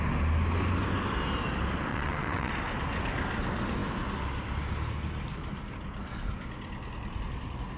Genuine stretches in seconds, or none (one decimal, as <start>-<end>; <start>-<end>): 0.0-1.9; 2.5-7.8